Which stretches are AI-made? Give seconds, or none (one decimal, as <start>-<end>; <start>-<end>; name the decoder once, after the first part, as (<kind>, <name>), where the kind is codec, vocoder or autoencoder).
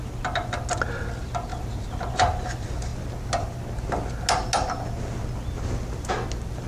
none